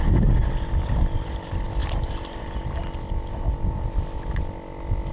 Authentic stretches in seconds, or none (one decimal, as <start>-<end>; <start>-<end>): 0.0-5.1